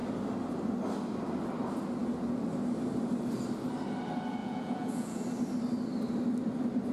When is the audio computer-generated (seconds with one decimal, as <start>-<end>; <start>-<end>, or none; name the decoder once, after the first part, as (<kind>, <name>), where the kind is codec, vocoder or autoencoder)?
4.4-5.2 (vocoder, Vocos)